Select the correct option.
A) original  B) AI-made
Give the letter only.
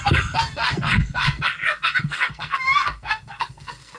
B